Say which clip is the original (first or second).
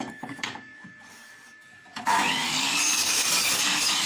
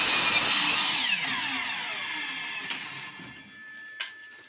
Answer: second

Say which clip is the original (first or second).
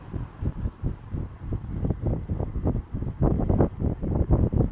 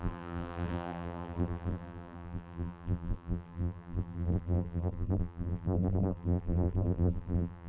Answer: first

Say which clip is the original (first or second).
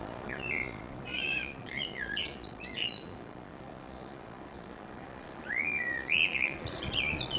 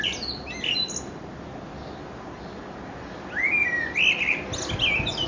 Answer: second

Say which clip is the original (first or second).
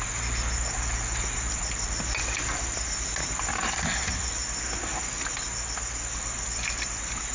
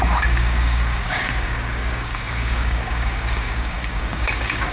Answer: first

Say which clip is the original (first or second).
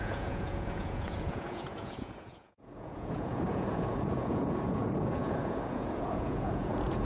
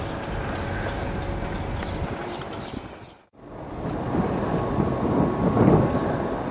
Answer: second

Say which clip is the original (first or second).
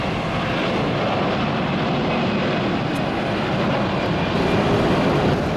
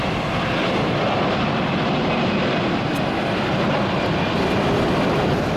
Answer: first